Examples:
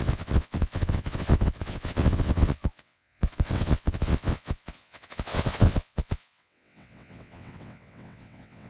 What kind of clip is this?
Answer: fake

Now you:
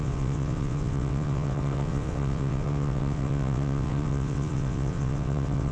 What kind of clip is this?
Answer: fake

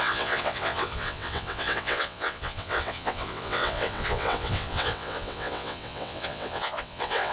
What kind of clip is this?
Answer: fake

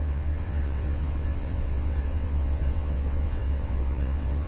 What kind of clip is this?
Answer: fake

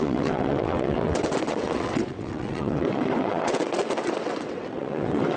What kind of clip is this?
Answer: fake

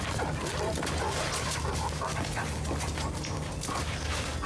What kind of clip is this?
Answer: real